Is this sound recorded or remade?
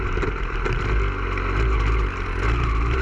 recorded